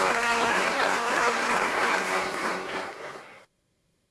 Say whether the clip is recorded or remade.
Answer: remade